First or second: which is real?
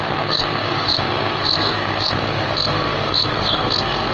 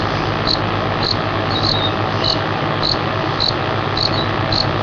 second